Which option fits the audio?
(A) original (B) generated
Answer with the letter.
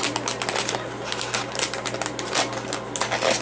A